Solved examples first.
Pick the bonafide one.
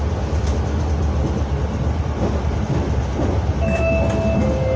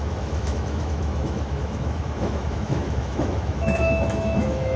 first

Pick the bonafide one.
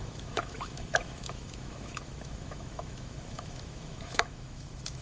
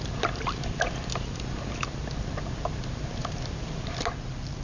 second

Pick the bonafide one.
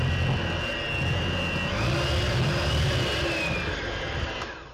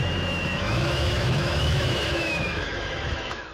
first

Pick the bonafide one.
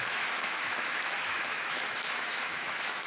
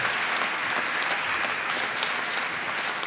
second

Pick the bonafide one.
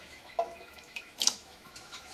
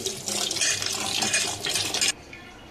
second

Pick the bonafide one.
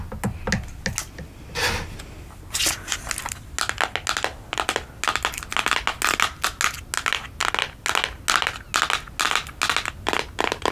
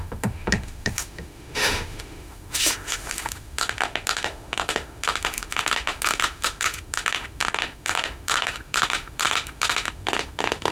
first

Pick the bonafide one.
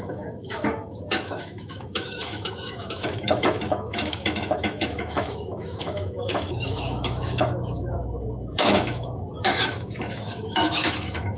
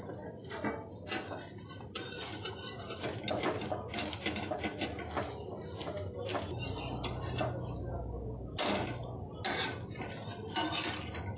second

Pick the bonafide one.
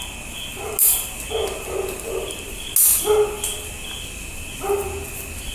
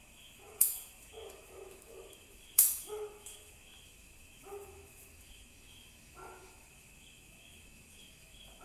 first